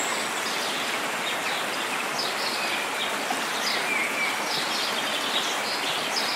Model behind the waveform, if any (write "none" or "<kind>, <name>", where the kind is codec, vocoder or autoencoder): none